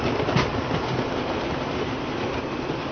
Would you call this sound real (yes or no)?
yes